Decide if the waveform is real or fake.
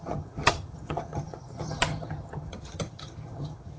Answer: fake